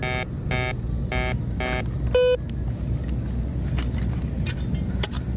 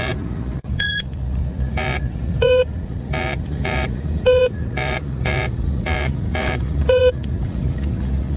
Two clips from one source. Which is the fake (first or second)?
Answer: second